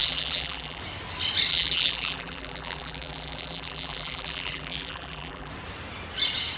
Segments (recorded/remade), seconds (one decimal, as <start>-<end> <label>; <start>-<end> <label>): 0.0-0.8 remade; 0.8-1.5 recorded; 1.5-5.5 remade; 5.5-6.6 recorded